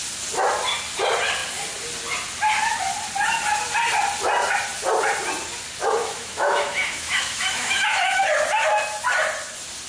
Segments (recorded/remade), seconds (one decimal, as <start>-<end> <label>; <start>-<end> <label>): 0.0-6.0 recorded; 6.0-8.2 remade; 8.2-9.9 recorded